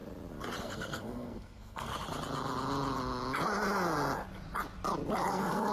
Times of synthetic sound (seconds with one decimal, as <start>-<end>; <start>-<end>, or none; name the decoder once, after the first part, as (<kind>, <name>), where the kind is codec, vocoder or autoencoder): 0.6-1.9 (codec, SNAC); 5.3-5.7